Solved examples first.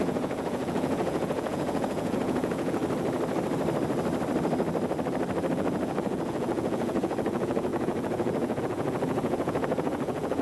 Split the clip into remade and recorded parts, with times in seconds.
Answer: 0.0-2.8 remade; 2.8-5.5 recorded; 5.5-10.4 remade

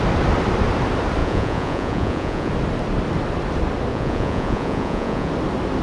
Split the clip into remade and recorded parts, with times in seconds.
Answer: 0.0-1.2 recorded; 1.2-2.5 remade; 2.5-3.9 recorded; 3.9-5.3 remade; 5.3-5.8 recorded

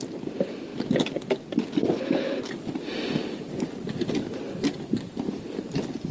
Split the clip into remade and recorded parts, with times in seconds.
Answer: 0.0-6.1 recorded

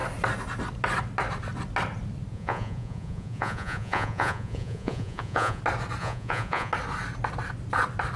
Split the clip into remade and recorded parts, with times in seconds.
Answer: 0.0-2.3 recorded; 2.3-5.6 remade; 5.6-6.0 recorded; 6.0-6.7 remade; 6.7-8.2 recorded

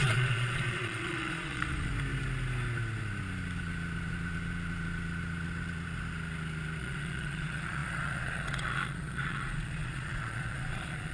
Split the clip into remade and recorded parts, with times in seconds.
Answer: 0.0-1.9 remade; 1.9-6.8 recorded; 6.8-11.1 remade

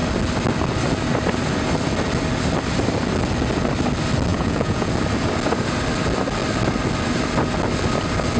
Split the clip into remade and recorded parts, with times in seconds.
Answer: 0.0-4.3 recorded; 4.3-4.9 remade; 4.9-8.4 recorded

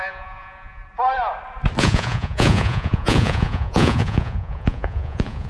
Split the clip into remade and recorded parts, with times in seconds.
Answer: 0.0-0.8 remade; 0.8-1.8 recorded; 1.8-5.5 remade